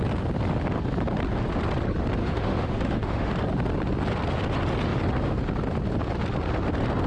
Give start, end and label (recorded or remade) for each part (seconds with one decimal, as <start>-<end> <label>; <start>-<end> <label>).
0.0-2.2 recorded; 2.2-3.3 remade; 3.3-7.1 recorded